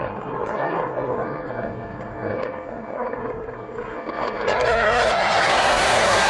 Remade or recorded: remade